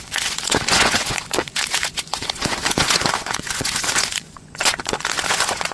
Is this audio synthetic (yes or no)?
yes